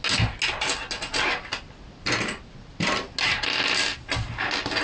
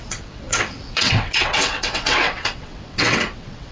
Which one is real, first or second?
first